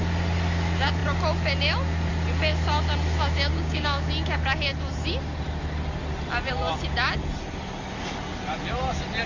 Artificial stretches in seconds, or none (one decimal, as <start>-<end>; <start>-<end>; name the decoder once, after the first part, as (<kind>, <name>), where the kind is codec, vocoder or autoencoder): 3.5-4.1 (codec, DAC)